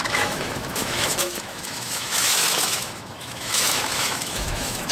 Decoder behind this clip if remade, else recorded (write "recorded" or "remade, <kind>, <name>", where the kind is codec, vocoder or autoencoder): remade, autoencoder, DAC-VAE